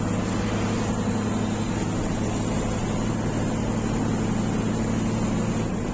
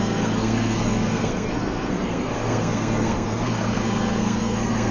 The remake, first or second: second